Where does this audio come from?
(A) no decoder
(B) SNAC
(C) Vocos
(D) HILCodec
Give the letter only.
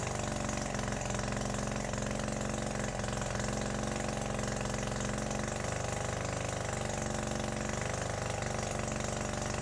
A